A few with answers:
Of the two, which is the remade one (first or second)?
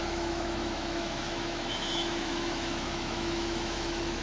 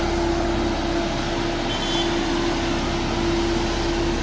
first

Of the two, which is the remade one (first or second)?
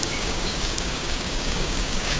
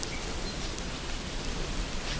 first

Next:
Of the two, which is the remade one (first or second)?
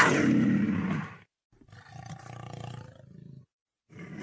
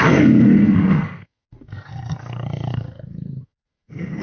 second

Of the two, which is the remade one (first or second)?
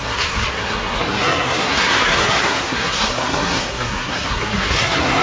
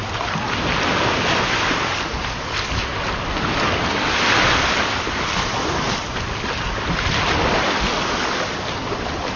first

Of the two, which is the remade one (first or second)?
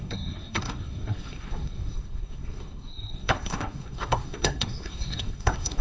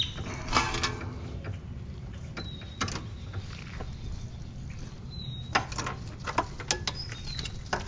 first